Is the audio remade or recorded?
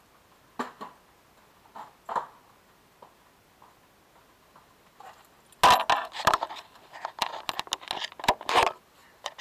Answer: recorded